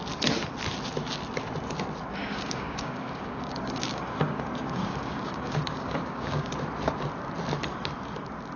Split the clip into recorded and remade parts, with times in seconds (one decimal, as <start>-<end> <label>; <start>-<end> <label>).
0.0-2.2 recorded; 2.2-6.5 remade; 6.5-8.6 recorded

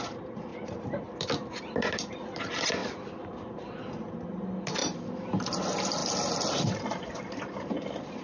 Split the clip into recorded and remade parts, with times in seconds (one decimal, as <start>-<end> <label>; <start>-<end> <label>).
0.0-8.2 recorded